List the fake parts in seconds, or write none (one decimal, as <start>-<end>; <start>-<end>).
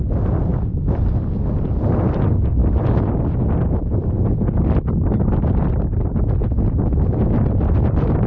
0.5-1.9